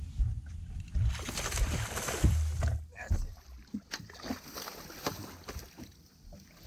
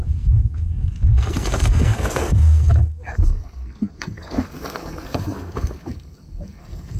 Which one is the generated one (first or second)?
second